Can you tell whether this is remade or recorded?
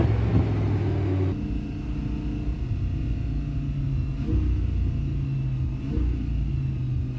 recorded